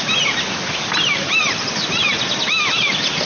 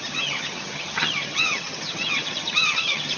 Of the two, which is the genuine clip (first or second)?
first